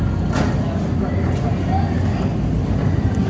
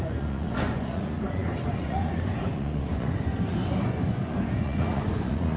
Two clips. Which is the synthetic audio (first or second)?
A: second